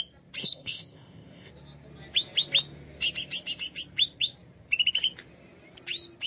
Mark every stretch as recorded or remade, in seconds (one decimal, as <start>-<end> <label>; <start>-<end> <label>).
0.0-0.4 recorded; 0.4-1.5 remade; 1.5-6.3 recorded